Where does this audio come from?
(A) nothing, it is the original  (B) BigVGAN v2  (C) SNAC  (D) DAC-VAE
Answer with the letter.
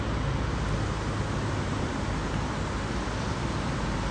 A